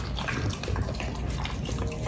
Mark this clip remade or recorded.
recorded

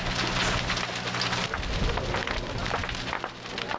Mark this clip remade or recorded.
recorded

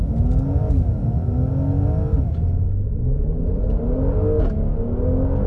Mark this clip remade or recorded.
recorded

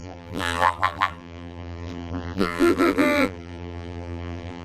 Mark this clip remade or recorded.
remade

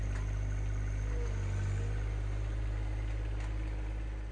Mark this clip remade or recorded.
recorded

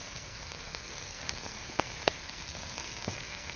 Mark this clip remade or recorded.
remade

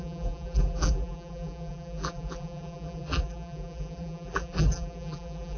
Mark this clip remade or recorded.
remade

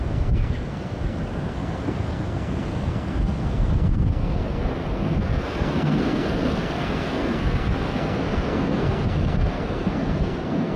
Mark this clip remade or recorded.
remade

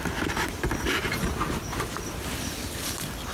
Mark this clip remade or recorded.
recorded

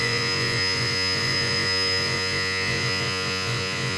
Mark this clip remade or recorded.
remade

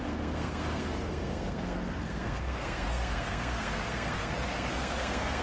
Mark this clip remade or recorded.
remade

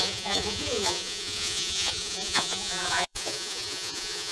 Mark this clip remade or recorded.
remade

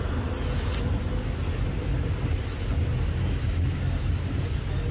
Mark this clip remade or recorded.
recorded